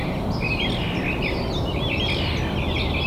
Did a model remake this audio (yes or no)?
no